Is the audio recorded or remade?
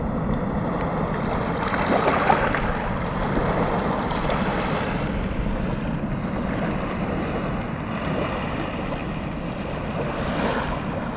recorded